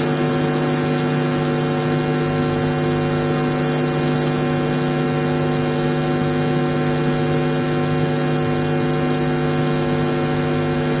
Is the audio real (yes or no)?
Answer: yes